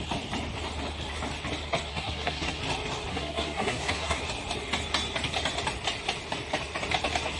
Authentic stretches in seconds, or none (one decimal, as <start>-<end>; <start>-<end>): 0.0-1.9; 2.6-3.1; 4.2-7.4